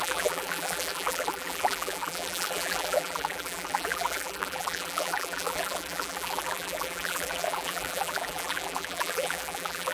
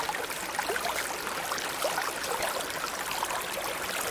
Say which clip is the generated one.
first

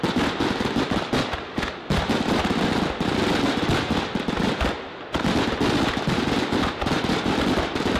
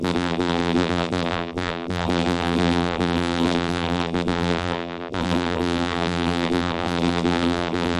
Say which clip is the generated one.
second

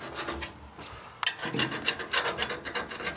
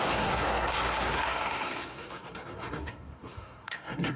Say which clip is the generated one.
second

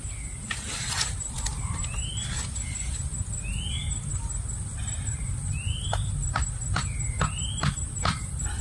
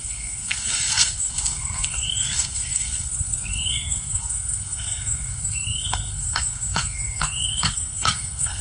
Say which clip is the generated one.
second